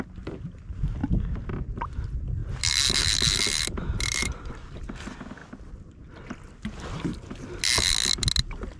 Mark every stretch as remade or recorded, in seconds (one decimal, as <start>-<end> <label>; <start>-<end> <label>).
0.0-4.2 recorded; 4.2-4.8 remade; 4.8-8.8 recorded